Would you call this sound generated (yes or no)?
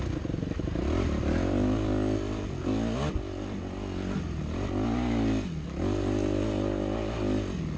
no